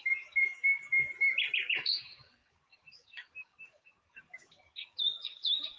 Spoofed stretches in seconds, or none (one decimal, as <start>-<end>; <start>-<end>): 0.0-1.1; 1.6-5.8